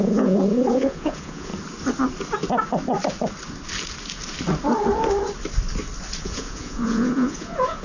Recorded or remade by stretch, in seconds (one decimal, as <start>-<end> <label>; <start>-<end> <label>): 0.0-1.5 remade; 1.5-6.2 recorded; 6.2-7.8 remade